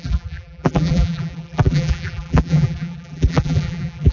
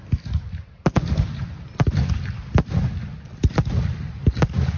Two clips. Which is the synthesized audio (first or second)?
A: first